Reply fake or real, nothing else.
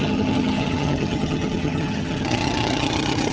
fake